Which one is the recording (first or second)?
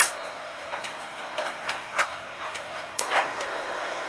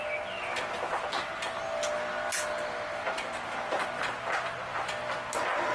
second